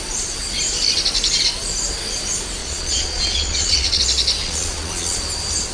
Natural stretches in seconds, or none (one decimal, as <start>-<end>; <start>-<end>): 0.0-2.6; 4.0-4.4; 5.2-5.7